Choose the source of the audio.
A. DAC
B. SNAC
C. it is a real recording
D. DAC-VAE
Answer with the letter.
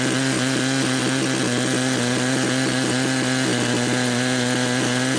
C